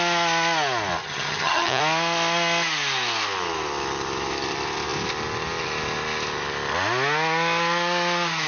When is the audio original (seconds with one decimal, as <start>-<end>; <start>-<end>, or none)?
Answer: 0.0-1.0; 1.8-8.5